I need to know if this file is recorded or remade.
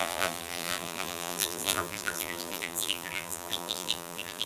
remade